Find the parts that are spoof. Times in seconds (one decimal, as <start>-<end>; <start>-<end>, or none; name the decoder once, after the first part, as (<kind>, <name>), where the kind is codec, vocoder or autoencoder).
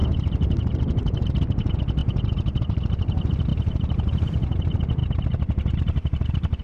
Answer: 2.0-2.6 (vocoder, BigVGAN v2)